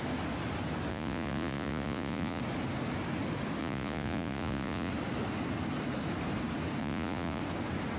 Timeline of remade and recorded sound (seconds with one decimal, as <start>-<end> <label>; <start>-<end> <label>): 0.0-0.9 recorded; 0.9-2.4 remade; 2.4-3.6 recorded; 3.6-4.9 remade; 4.9-6.8 recorded; 6.8-7.4 remade; 7.4-8.0 recorded